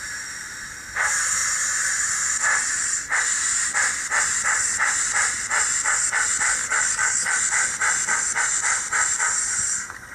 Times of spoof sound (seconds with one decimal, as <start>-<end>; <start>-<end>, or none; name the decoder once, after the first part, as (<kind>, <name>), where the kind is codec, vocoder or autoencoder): 6.6-7.4 (codec, DAC)